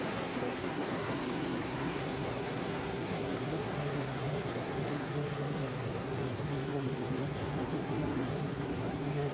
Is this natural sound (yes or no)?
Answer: no